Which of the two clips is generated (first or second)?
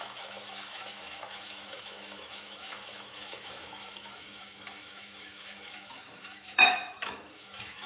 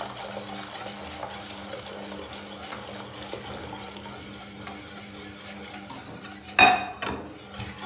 first